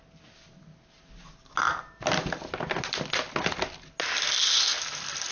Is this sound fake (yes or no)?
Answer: no